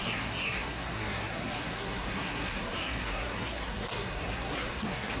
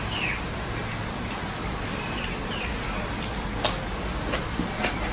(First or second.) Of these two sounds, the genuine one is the second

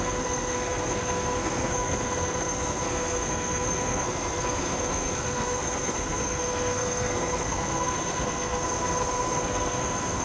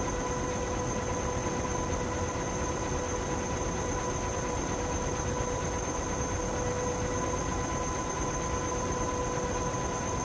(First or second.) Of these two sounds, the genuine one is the second